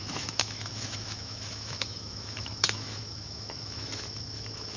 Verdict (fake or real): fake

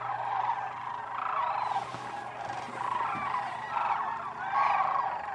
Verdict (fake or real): real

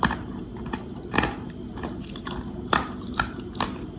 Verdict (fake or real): real